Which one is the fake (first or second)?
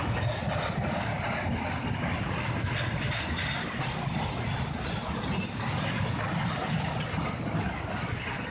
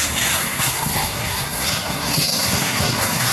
second